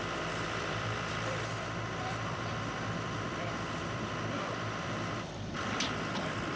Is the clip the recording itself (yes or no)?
no